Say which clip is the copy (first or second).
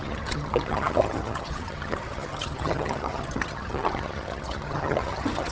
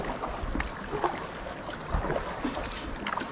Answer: first